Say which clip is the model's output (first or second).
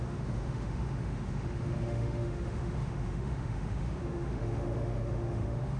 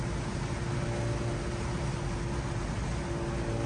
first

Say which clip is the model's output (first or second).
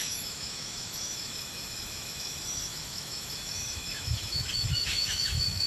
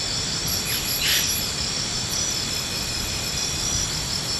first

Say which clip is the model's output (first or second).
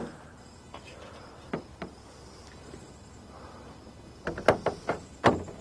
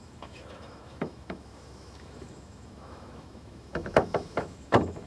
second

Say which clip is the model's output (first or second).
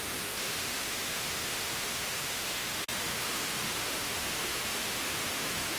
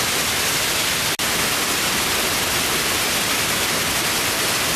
first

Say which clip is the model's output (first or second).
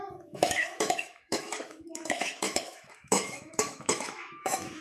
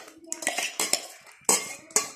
first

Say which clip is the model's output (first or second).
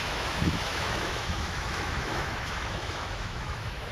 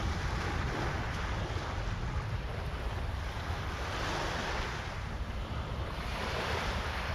first